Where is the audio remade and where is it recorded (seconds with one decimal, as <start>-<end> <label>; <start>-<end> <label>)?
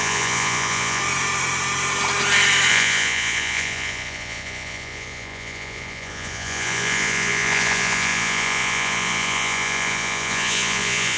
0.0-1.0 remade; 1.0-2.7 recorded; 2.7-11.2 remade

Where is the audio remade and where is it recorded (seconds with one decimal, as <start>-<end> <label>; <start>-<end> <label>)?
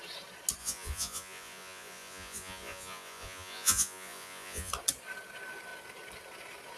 0.0-0.6 recorded; 0.6-4.7 remade; 4.7-6.8 recorded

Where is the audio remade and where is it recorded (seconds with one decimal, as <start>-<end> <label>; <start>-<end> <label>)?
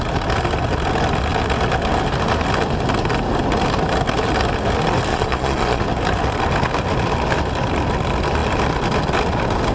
0.0-5.1 recorded; 5.1-5.8 remade; 5.8-9.7 recorded